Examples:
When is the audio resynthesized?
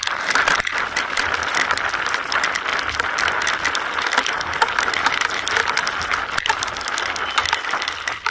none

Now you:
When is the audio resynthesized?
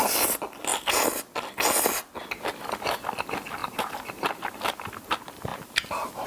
3.6-4.5 (vocoder, BigVGAN v2); 5.5-6.3